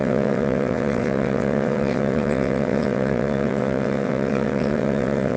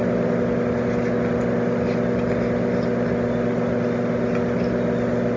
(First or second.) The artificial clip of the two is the first